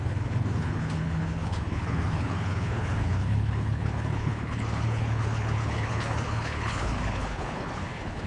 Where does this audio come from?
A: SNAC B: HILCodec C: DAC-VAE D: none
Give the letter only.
B